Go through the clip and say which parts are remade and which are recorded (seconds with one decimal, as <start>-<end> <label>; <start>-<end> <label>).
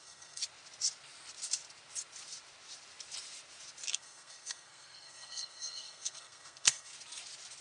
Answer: 0.0-0.4 remade; 0.4-3.9 recorded; 3.9-6.9 remade; 6.9-7.6 recorded